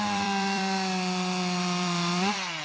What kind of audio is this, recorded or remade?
remade